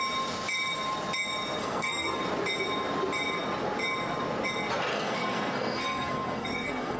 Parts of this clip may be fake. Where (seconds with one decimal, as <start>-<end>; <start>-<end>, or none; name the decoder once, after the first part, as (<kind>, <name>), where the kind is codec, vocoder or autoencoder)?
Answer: 1.6-2.2 (codec, SNAC); 4.9-7.0